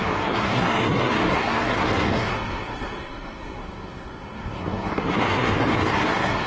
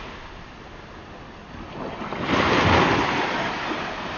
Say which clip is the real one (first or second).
second